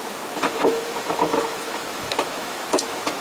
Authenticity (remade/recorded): remade